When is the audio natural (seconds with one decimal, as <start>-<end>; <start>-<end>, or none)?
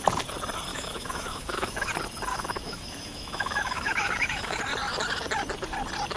0.0-0.7; 1.9-2.3; 4.6-6.2